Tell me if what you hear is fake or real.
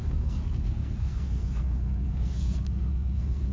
fake